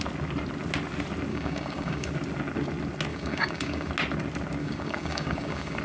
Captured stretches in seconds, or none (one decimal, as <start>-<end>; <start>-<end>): 0.0-1.3; 2.1-3.1; 3.9-4.6